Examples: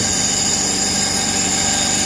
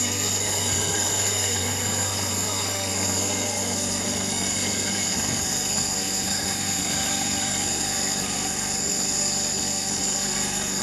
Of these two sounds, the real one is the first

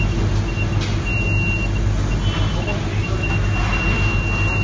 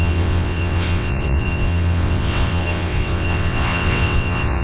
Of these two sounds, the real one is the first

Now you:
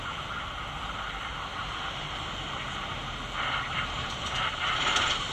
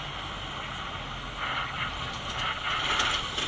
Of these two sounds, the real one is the second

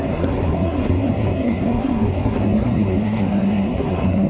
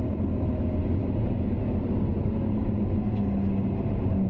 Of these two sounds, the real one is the second